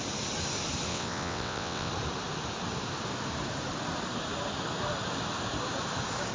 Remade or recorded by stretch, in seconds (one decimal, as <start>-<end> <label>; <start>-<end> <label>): 0.0-0.9 recorded; 0.9-1.9 remade; 1.9-6.3 recorded

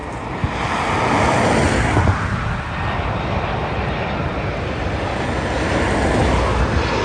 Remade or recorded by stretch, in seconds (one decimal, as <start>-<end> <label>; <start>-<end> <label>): 0.0-7.0 recorded

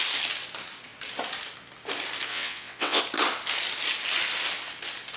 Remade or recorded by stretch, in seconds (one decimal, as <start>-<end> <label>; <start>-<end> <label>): 0.0-2.3 recorded; 2.3-3.0 remade; 3.0-5.2 recorded